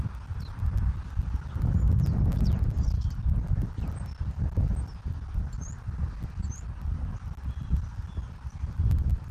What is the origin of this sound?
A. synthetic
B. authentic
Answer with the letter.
A